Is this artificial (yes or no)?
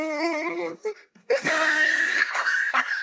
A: yes